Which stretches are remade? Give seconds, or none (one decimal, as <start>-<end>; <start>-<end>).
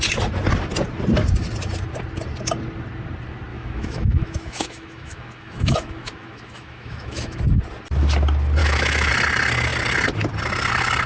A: 3.5-7.4; 8.6-9.1